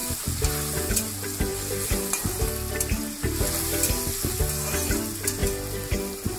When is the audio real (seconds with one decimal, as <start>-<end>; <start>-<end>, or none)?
0.0-6.4